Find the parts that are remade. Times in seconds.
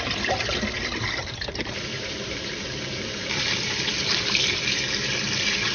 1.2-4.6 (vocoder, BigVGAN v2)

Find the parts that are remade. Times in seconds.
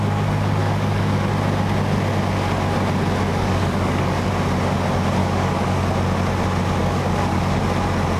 0.6-1.3 (codec, DAC); 3.3-4.3; 5.2-5.8; 6.8-7.6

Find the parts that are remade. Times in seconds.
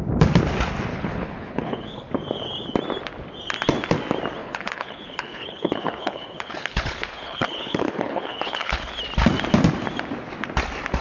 0.9-2.1 (codec, HILCodec); 4.4-8.9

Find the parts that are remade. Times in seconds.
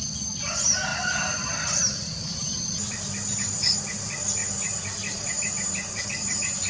0.9-3.8 (vocoder, BigVGAN v2); 4.4-5.5